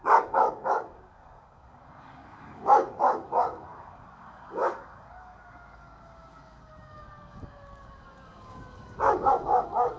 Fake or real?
fake